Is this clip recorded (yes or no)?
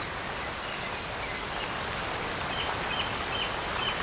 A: yes